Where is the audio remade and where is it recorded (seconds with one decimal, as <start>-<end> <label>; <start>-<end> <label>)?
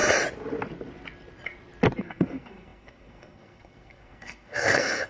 0.0-2.0 recorded; 2.0-5.1 remade